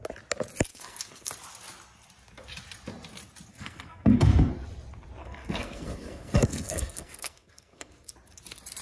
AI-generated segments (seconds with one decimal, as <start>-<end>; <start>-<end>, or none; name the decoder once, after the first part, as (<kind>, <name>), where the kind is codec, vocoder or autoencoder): 0.7-1.3 (codec, SNAC); 3.5-4.5; 5.2-8.1